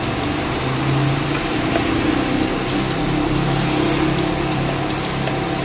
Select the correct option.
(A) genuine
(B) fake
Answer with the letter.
A